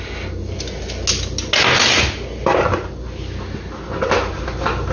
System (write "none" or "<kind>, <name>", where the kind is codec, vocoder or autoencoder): none